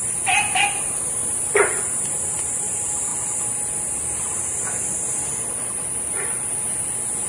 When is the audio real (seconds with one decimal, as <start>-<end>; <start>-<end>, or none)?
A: 0.0-7.3